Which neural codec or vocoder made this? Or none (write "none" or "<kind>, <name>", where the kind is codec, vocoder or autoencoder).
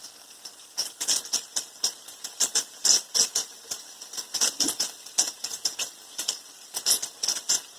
none